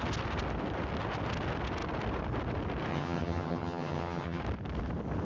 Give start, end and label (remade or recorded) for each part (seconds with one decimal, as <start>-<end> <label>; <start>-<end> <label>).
0.0-2.9 recorded; 2.9-4.4 remade; 4.4-5.2 recorded